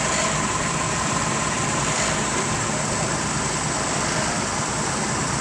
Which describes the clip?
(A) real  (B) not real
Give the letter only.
A